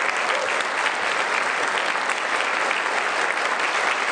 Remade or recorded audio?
recorded